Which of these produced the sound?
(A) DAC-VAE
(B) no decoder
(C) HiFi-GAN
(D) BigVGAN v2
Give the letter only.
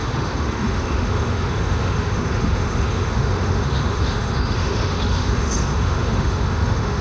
A